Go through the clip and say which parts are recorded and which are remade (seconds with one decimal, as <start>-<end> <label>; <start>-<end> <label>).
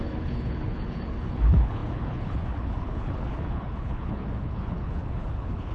0.0-5.7 remade